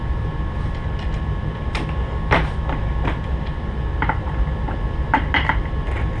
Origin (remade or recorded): recorded